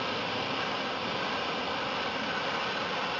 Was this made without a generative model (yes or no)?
yes